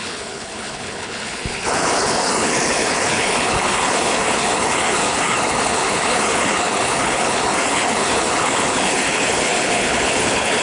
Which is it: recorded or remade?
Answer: remade